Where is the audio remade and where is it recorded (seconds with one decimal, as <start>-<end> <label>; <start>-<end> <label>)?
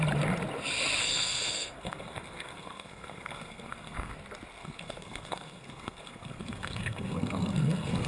0.0-1.0 recorded; 1.0-4.1 remade; 4.1-4.6 recorded; 4.6-8.1 remade